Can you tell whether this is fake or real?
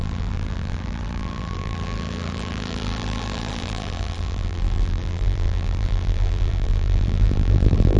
fake